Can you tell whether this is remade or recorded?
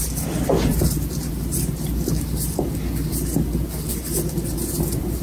recorded